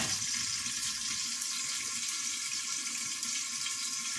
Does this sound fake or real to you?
real